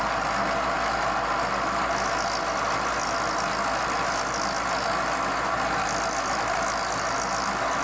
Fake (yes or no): no